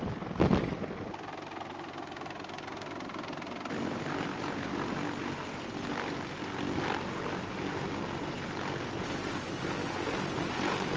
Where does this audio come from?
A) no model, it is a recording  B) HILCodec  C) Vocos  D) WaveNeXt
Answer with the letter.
A